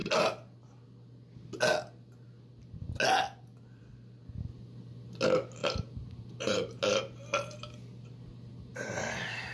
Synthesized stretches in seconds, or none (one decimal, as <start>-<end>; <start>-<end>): 5.6-6.8; 8.7-9.5